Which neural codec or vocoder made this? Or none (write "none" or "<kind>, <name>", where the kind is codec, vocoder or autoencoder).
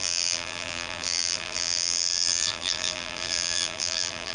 vocoder, BigVGAN v2